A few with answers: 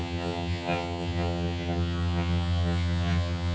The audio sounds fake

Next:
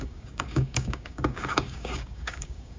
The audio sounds fake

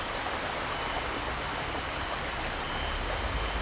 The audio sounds real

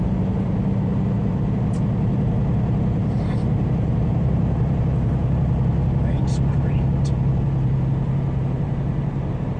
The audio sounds fake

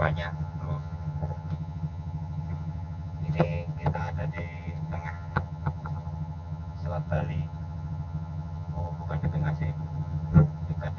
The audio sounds fake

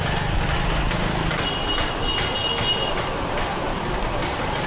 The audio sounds real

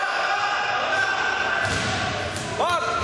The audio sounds real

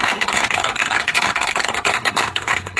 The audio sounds fake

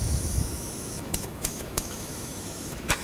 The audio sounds fake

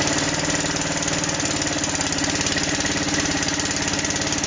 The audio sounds real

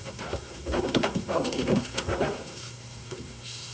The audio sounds fake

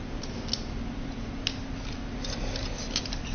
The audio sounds real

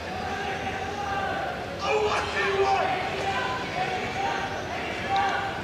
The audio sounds real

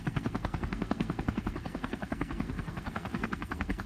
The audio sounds fake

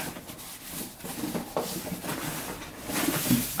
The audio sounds real